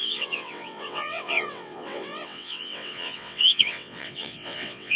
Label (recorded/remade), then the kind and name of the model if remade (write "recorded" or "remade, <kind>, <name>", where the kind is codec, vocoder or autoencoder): remade, vocoder, WaveNeXt